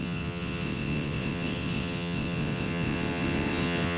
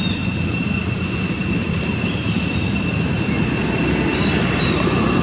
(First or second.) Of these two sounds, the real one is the second